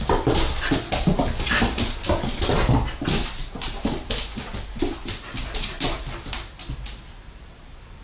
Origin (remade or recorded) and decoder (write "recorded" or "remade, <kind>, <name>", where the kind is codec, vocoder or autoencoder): recorded